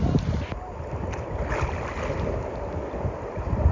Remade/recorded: recorded